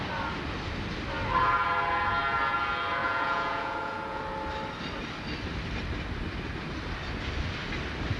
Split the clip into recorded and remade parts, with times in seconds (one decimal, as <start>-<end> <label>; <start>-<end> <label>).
0.0-3.0 recorded; 3.0-4.2 remade; 4.2-8.2 recorded